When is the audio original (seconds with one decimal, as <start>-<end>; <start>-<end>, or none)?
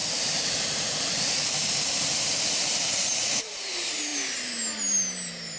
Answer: 4.1-4.8